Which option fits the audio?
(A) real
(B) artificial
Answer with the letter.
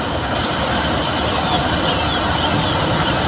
A